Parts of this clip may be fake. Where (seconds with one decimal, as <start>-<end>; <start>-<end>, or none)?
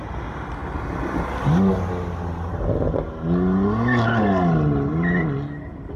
none